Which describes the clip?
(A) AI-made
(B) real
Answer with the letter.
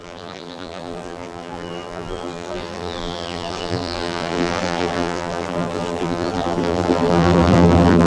A